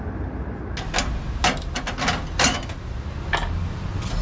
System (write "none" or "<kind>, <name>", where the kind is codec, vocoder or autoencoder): none